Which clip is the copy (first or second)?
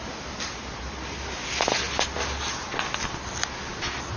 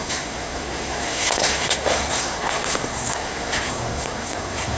second